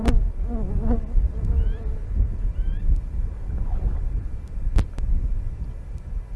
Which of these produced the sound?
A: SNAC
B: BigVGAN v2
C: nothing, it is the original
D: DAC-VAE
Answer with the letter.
C